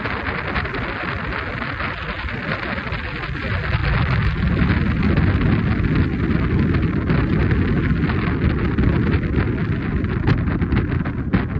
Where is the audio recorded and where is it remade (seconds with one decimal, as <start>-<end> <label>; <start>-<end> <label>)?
0.0-11.6 recorded